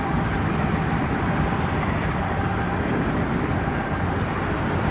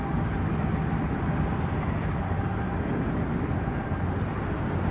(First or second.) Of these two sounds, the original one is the second